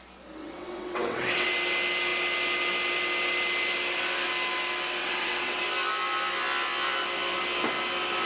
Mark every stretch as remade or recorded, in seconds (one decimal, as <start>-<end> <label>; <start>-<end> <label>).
0.0-0.4 recorded; 0.4-1.5 remade; 1.5-5.0 recorded; 5.0-5.6 remade; 5.6-8.3 recorded